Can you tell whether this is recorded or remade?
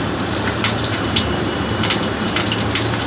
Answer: remade